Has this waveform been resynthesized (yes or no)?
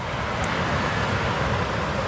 no